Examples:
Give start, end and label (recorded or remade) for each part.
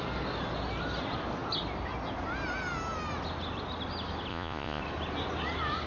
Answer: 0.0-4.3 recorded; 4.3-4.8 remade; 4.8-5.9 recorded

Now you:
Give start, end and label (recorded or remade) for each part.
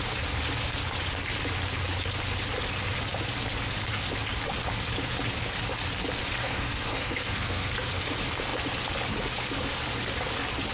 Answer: 0.0-6.4 recorded; 6.4-7.9 remade; 7.9-10.7 recorded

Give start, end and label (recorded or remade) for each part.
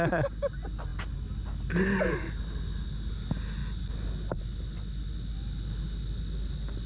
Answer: 0.0-6.9 recorded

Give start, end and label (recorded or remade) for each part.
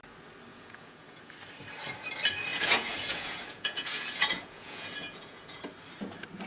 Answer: 0.0-0.5 recorded; 0.5-1.3 remade; 1.3-2.5 recorded; 2.5-5.6 remade; 5.6-6.5 recorded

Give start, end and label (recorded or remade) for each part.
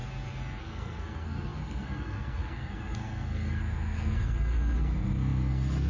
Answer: 0.0-0.6 recorded; 0.6-5.9 remade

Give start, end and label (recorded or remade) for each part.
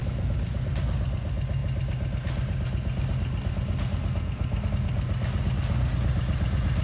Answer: 0.0-6.8 recorded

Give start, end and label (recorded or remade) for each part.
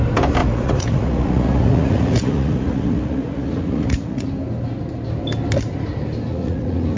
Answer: 0.0-0.4 recorded; 0.4-4.3 remade; 4.3-6.3 recorded; 6.3-7.0 remade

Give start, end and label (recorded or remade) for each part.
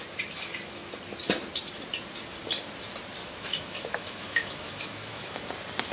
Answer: 0.0-3.2 recorded; 3.2-5.5 remade; 5.5-5.9 recorded